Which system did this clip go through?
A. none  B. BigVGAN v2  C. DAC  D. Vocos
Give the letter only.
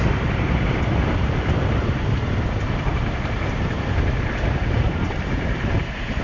B